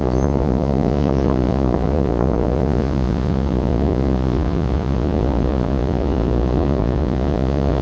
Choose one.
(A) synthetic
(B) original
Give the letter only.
A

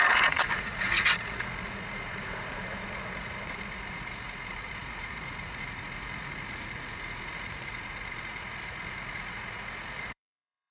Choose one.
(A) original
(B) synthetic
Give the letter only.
B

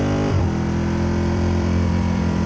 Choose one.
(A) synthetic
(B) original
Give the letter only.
A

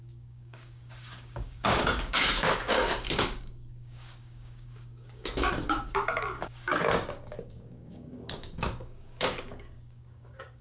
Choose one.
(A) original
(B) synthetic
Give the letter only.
B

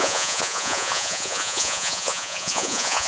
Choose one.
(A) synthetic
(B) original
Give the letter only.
A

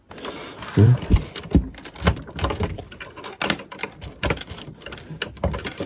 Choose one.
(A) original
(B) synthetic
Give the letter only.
B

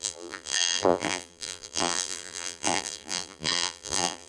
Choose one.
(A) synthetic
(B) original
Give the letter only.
A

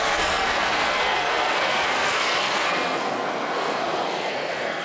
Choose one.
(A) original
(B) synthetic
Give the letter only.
B